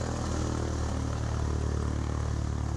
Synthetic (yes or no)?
no